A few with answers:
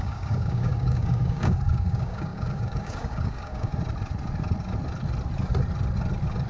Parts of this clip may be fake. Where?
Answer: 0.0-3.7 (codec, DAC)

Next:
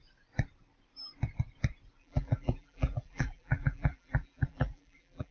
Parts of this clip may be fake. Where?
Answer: 2.0-5.3 (vocoder, BigVGAN v2)

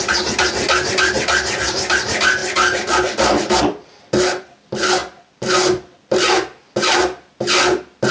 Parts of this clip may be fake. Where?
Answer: none

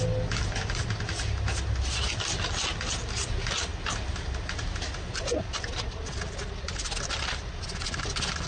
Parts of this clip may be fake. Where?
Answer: none

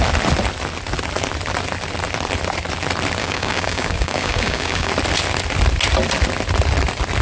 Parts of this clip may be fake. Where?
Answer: 3.2-4.9 (codec, DAC)

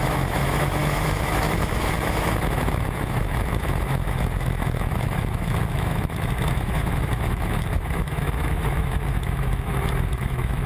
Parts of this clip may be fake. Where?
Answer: 0.0-10.7 (autoencoder, DAC-VAE)

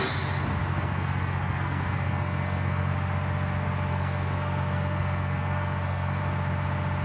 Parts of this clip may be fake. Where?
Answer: 0.7-2.9 (codec, SNAC); 3.9-6.2

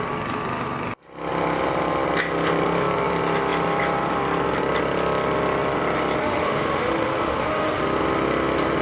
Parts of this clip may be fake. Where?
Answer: 6.2-7.8 (autoencoder, DAC-VAE)